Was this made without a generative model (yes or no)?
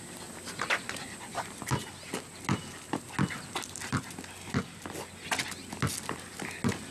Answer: yes